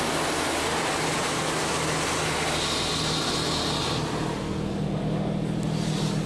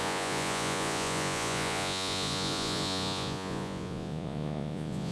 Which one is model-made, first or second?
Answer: second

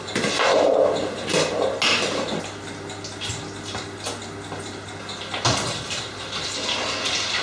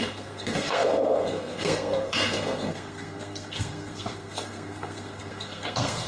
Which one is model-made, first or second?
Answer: second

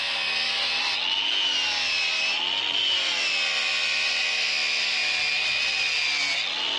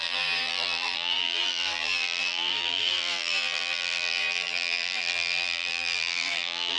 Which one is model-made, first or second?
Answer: second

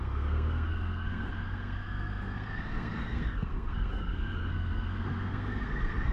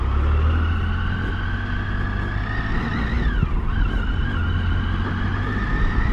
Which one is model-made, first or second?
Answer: first